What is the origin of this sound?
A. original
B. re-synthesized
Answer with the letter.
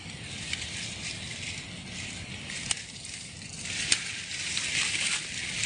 A